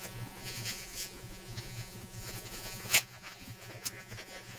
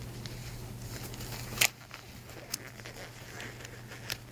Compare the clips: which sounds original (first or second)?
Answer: second